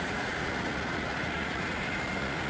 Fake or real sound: fake